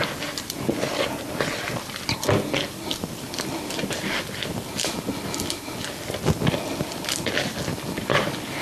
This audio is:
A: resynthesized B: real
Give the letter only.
B